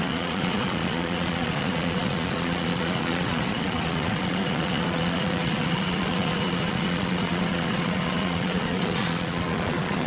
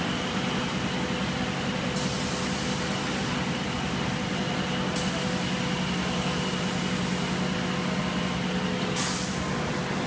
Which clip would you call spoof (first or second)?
first